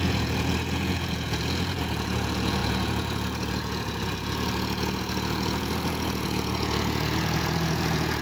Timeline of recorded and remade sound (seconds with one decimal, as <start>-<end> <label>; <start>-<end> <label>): 0.0-8.2 remade